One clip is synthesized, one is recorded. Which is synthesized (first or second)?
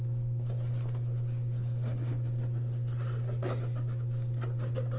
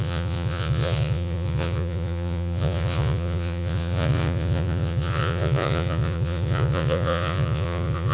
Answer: second